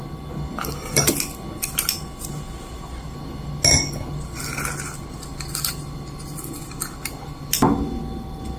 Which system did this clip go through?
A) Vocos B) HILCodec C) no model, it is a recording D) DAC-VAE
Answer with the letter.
C